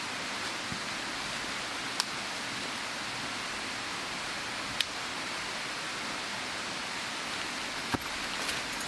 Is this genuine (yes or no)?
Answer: yes